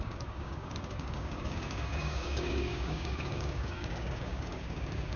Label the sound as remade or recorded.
remade